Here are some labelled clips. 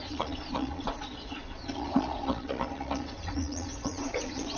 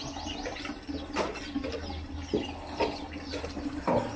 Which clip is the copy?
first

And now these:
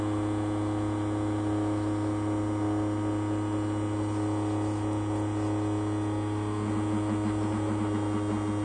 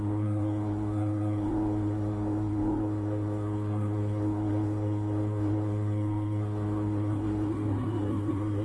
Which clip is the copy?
second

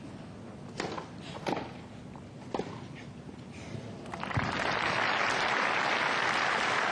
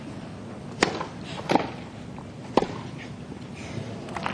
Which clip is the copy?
second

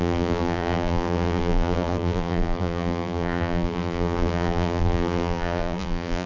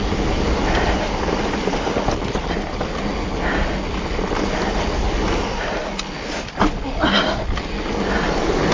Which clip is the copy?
first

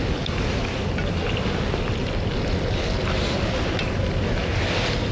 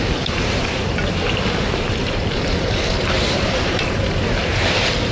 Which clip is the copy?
second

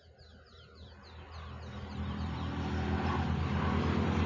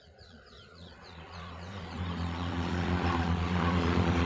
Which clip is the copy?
second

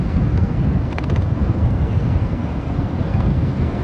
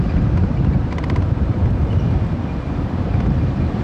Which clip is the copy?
first